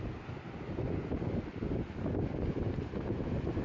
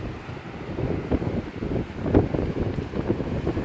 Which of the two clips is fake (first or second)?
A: second